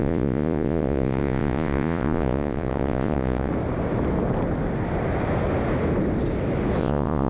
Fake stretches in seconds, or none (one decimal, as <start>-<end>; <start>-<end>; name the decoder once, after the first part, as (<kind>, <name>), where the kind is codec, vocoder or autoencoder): 0.0-3.5 (vocoder, Vocos); 6.8-7.3